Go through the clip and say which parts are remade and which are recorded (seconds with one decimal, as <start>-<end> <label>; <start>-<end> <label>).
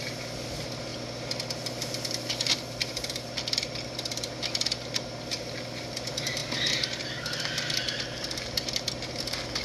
0.0-9.6 recorded